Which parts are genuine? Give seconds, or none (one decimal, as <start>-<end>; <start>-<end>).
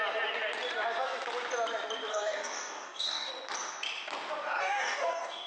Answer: 0.0-2.1; 3.3-4.6